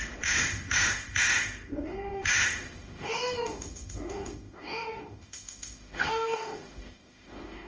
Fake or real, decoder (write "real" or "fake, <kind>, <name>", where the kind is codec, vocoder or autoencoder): fake, autoencoder, DAC-VAE